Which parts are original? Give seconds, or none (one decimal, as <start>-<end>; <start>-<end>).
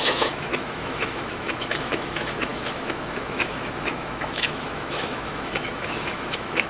none